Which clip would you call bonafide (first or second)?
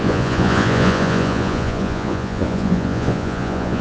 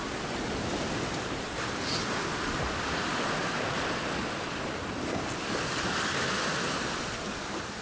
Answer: second